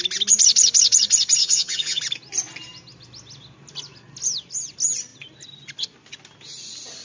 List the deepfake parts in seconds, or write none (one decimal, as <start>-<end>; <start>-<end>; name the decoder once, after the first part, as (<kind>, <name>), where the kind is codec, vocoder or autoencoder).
1.4-2.0 (vocoder, HiFi-GAN)